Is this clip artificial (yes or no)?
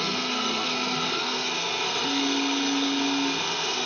yes